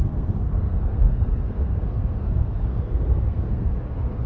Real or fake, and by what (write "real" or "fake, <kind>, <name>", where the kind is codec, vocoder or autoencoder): fake, codec, SNAC